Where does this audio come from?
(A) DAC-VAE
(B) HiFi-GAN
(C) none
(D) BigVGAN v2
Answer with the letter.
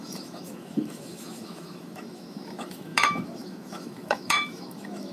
A